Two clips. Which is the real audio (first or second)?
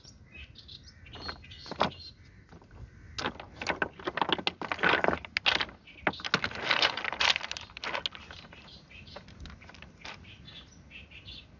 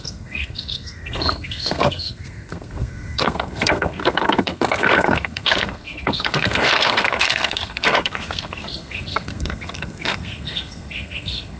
first